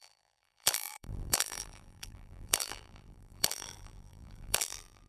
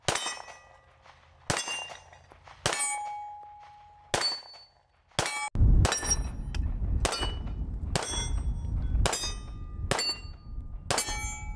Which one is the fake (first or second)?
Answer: first